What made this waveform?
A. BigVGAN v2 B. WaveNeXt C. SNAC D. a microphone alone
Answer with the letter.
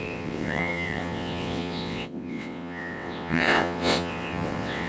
B